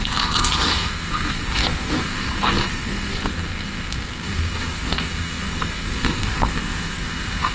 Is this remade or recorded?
remade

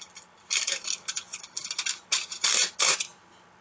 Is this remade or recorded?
recorded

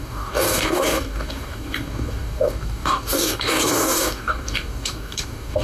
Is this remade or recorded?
remade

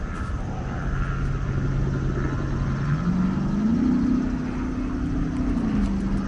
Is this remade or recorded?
recorded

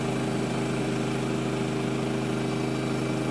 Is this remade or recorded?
recorded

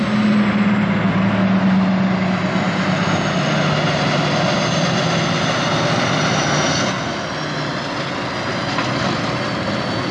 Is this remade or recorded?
recorded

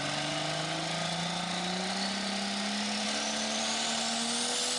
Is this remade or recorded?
recorded